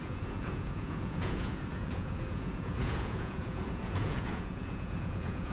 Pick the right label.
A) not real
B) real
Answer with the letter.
A